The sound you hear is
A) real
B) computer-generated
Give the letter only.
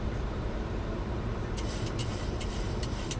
B